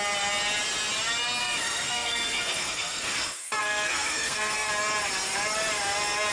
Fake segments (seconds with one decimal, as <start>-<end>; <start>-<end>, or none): 1.4-4.7